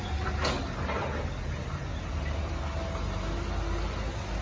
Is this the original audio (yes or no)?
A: yes